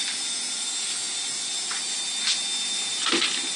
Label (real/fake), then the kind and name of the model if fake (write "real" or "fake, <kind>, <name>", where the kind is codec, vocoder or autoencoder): real